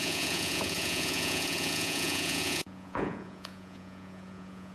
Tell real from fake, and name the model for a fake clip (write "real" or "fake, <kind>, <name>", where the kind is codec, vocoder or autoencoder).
fake, vocoder, Vocos